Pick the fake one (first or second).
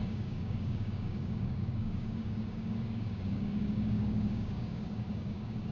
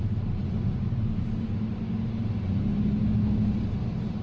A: first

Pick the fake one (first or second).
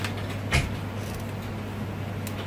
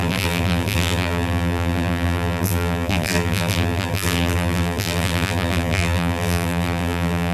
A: second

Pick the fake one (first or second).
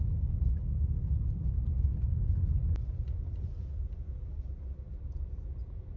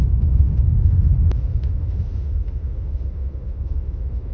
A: second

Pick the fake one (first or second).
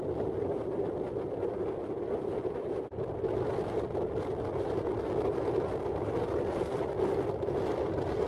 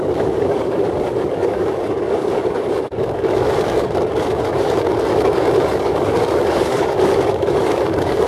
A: second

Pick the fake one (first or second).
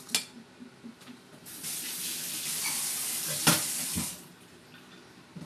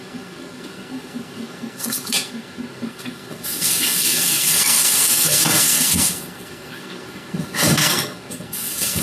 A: second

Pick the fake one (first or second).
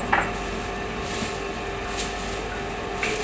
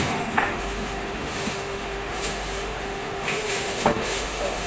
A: second